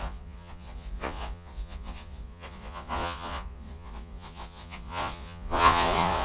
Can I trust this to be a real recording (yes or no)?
no